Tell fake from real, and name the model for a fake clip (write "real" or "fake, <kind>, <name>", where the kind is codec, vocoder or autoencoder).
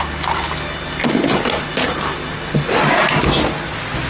real